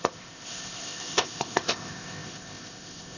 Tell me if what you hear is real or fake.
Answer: fake